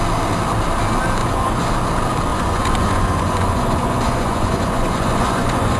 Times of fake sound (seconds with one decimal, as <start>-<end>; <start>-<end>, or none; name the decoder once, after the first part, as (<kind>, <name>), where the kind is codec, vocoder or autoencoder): 1.2-1.7 (vocoder, Vocos); 2.3-5.8